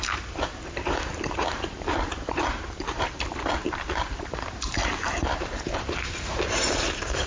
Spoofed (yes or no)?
yes